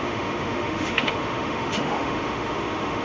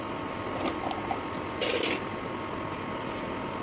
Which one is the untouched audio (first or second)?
second